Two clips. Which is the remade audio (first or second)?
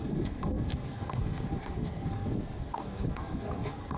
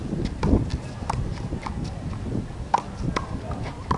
first